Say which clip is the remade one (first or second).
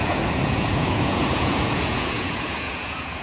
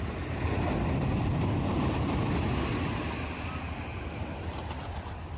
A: first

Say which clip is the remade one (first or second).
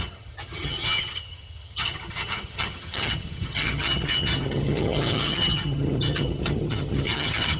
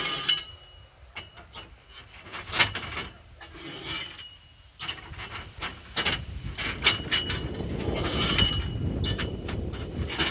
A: first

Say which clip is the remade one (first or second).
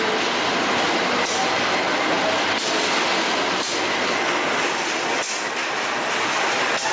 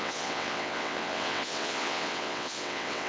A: second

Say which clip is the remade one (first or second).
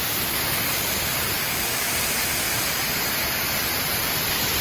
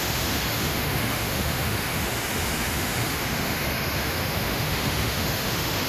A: second